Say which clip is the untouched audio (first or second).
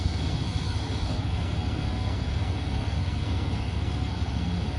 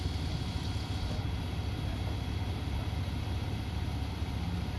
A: second